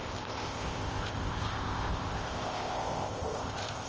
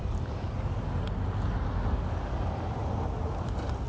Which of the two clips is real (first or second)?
second